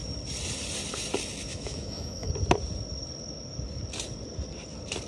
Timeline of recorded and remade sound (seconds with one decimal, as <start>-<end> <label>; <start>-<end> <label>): 0.0-1.5 recorded; 1.5-2.3 remade; 2.3-5.1 recorded